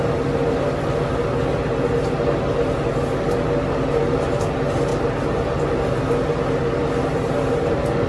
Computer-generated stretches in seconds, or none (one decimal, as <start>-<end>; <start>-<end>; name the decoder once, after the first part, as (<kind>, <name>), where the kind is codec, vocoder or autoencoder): none